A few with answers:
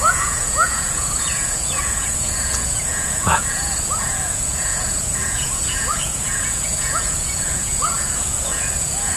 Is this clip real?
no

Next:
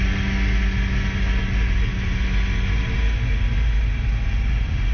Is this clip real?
yes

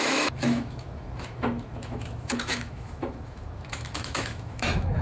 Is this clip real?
no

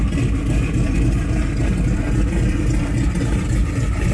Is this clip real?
yes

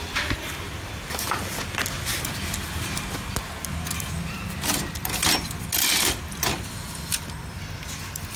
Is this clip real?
yes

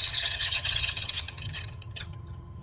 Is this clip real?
no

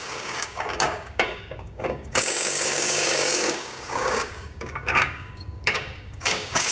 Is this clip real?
no